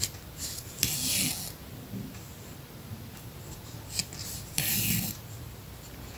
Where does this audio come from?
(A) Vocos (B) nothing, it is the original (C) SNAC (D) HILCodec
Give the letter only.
B